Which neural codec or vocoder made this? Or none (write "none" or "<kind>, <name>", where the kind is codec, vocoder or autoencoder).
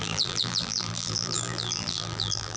vocoder, BigVGAN v2